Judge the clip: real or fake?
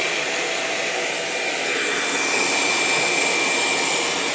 real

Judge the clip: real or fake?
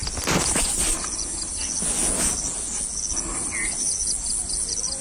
real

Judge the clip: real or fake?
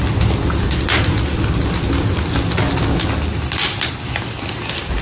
real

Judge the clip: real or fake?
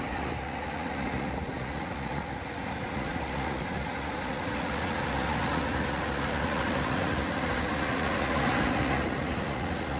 fake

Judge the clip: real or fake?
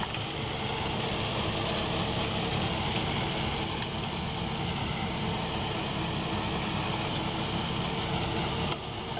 real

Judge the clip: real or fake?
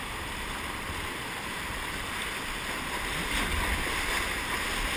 real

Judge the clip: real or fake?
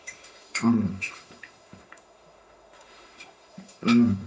fake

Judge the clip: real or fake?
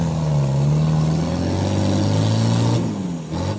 real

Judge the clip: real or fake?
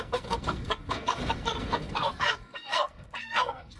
fake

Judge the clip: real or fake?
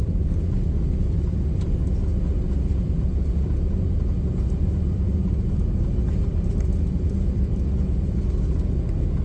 real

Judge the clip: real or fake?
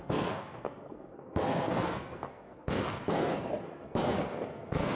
fake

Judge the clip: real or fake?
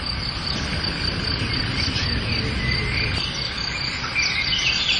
real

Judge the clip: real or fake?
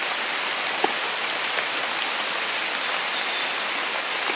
real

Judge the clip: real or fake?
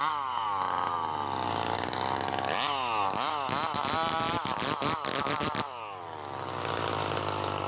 real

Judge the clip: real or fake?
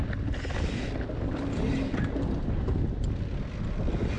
real